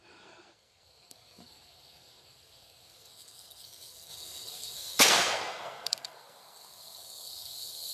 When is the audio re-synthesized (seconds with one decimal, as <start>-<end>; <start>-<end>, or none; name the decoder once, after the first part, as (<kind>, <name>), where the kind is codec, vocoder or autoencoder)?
0.0-7.9 (codec, SNAC)